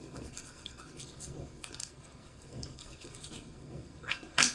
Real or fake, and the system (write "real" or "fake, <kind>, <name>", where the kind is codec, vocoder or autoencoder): fake, codec, SNAC